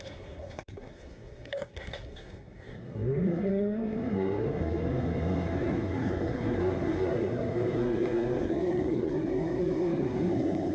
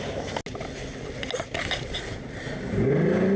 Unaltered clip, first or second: second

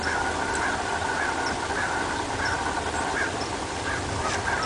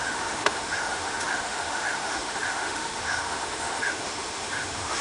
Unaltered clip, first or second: first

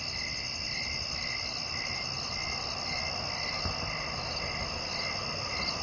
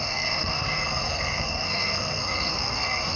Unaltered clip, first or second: first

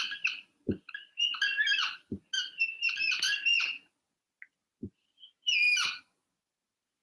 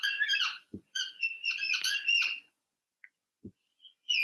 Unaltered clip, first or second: first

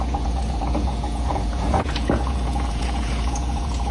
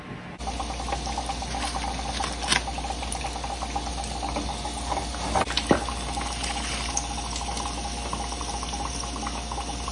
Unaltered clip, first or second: second